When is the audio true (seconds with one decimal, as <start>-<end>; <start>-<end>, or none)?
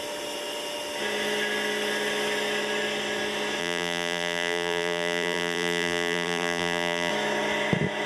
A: 0.0-3.6; 7.1-8.1